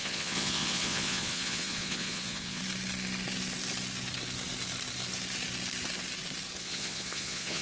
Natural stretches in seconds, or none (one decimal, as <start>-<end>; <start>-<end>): 2.6-6.6